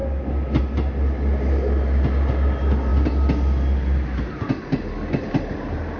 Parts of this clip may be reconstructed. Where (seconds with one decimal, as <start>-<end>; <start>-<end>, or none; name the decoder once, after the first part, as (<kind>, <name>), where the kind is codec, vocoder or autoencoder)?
none